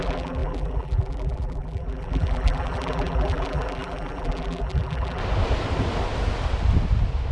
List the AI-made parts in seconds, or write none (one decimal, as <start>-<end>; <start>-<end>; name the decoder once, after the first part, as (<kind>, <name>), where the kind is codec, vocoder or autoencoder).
0.0-5.2 (vocoder, BigVGAN v2)